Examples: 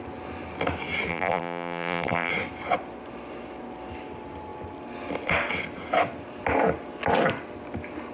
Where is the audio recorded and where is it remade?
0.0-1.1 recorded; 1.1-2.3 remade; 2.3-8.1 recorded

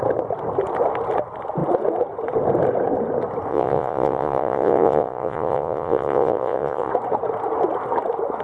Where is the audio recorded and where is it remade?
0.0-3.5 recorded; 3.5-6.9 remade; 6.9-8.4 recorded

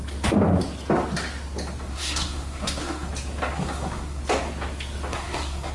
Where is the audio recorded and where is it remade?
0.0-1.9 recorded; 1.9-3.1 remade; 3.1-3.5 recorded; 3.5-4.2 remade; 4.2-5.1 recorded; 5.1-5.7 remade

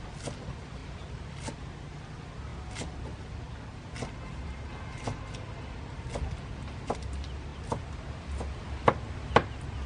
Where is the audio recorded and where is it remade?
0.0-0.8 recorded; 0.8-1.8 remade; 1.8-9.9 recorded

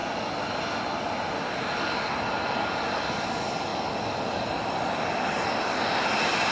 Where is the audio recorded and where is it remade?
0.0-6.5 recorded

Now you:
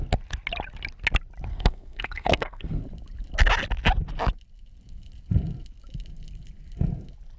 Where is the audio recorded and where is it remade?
0.0-1.5 recorded; 1.5-2.8 remade; 2.8-7.4 recorded

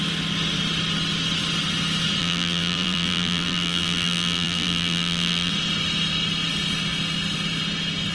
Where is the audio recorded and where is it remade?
0.0-2.2 recorded; 2.2-5.5 remade; 5.5-8.1 recorded